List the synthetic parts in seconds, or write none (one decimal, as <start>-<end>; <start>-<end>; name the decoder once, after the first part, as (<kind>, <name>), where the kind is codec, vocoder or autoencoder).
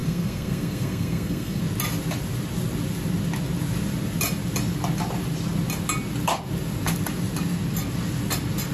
0.0-1.6 (codec, SNAC)